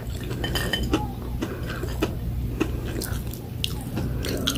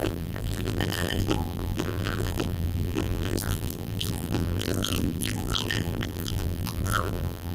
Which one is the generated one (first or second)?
second